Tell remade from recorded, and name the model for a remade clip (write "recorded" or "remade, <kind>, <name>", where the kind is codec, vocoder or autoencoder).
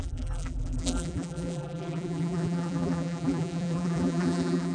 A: remade, vocoder, BigVGAN v2